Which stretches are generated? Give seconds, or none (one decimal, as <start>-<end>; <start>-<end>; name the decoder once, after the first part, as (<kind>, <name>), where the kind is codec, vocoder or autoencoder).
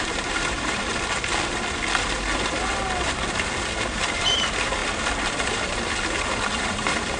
0.0-0.9 (vocoder, BigVGAN v2); 3.9-4.8; 6.6-7.2